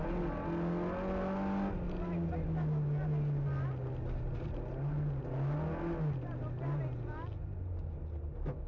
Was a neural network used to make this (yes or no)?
no